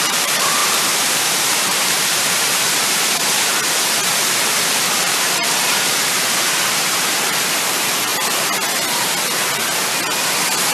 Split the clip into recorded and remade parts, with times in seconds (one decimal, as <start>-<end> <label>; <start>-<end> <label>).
0.0-3.3 remade; 3.3-4.2 recorded; 4.2-8.1 remade; 8.1-10.7 recorded